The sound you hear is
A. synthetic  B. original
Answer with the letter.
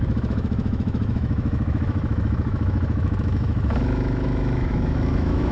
A